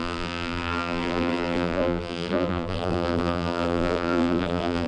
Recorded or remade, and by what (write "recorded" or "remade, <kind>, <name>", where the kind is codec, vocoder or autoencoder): remade, vocoder, BigVGAN v2